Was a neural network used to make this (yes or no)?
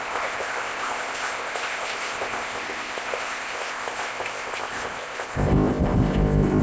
yes